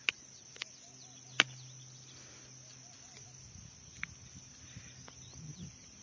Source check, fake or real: real